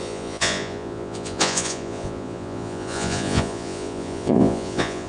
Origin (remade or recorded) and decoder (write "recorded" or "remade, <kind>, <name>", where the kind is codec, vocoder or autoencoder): remade, vocoder, Vocos